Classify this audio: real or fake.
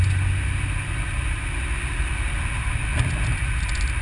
real